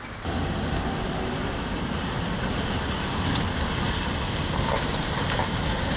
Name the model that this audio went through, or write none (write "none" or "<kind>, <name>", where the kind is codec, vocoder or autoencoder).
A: none